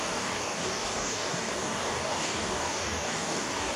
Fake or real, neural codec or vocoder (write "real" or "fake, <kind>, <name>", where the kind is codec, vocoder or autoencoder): fake, codec, DAC